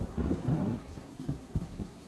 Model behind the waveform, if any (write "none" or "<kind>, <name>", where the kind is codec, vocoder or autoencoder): codec, SNAC